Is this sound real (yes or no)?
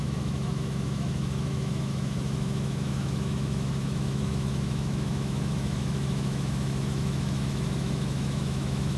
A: no